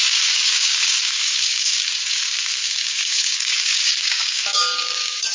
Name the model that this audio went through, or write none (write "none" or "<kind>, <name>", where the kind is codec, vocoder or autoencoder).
codec, DAC